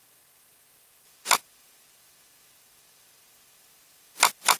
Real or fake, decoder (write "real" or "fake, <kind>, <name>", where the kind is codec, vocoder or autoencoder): fake, vocoder, BigVGAN v2